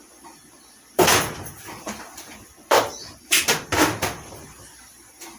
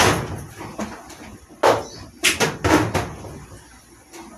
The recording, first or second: second